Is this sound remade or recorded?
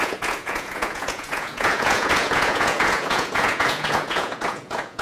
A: remade